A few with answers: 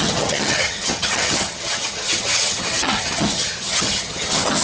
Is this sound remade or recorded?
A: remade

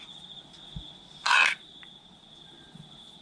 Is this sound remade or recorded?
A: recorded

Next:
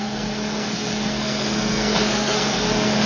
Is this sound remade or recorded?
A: remade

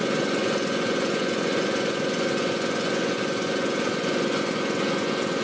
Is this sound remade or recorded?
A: remade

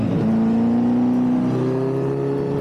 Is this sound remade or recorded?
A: recorded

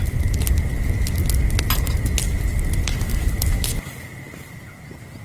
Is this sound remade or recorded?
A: recorded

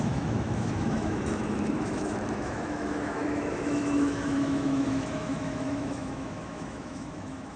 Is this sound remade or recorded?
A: remade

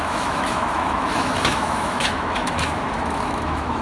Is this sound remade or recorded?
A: remade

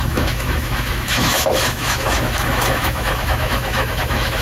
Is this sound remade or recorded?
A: remade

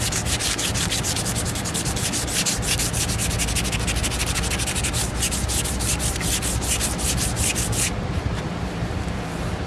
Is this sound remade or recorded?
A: recorded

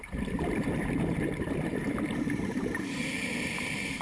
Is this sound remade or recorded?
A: remade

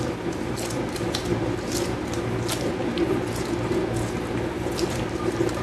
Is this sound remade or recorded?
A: recorded